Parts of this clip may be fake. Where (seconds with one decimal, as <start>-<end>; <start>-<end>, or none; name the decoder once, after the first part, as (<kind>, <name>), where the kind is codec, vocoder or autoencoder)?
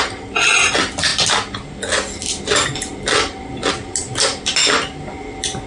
none